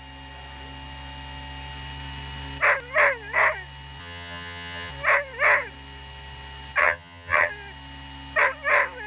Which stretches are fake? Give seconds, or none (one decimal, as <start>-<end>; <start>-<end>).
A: 4.0-4.9; 6.8-7.5

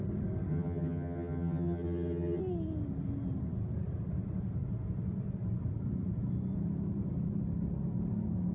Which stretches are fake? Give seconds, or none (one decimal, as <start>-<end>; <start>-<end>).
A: 0.5-2.4

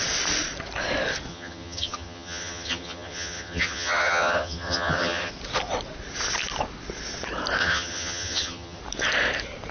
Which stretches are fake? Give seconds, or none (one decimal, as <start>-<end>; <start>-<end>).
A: 1.3-5.3; 7.6-8.8